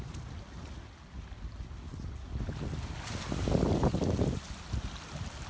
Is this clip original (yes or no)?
yes